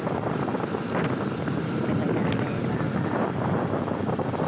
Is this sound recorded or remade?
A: recorded